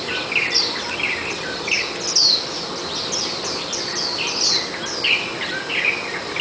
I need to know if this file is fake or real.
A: real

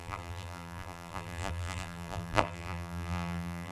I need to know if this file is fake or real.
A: fake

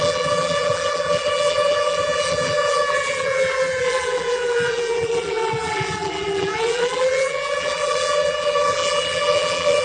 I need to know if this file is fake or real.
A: fake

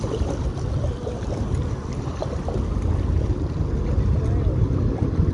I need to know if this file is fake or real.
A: real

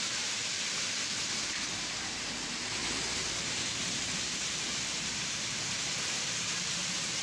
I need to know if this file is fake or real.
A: fake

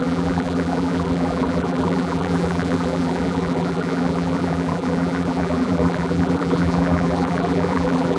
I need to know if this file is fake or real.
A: fake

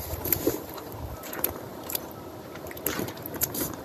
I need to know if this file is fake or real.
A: fake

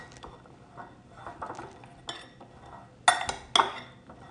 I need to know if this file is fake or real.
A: real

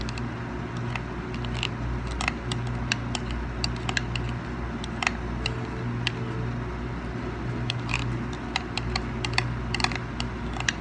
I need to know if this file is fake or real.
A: real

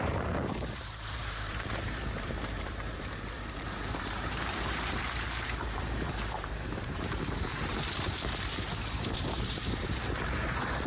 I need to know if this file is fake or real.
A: fake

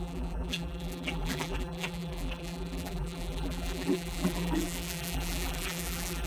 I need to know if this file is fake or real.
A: fake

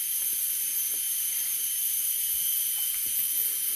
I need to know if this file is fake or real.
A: fake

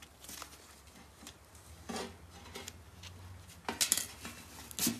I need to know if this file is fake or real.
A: real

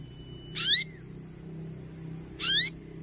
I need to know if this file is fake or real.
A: real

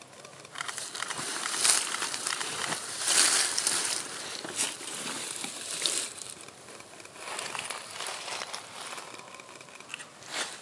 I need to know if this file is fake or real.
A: fake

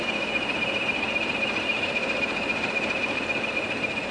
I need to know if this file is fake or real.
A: fake